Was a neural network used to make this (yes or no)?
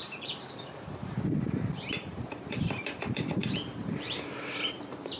yes